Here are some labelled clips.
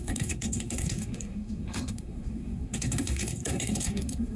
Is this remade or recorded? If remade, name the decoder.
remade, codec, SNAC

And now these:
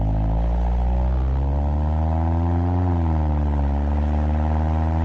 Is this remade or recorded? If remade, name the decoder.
recorded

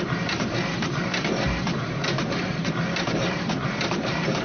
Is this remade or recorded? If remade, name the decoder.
remade, vocoder, BigVGAN v2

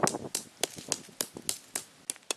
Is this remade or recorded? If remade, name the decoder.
recorded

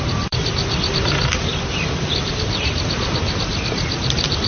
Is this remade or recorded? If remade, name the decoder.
remade, vocoder, BigVGAN v2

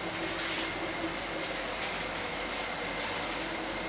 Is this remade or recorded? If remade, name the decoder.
recorded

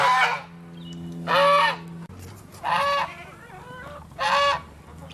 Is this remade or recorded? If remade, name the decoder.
recorded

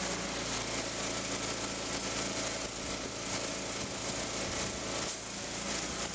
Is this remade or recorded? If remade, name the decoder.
recorded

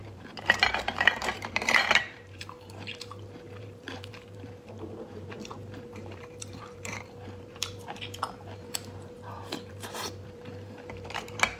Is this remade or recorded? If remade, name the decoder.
remade, vocoder, BigVGAN v2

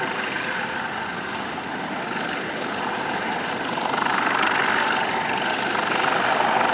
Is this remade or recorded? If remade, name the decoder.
recorded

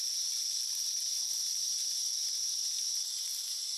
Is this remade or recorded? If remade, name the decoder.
recorded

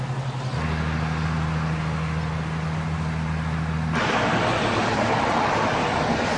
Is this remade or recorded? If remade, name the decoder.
recorded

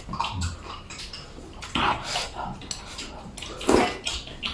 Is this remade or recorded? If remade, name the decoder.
recorded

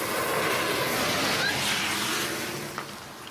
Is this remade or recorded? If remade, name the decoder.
recorded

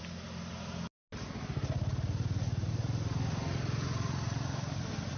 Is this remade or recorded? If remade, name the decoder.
recorded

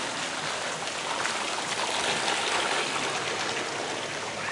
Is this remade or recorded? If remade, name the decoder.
recorded